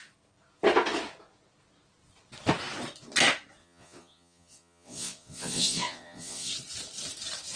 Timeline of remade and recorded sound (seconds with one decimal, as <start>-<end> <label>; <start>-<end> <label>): 0.0-3.6 recorded; 3.6-6.5 remade; 6.5-7.6 recorded